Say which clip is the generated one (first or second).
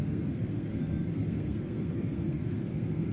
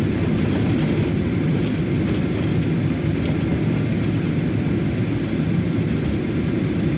first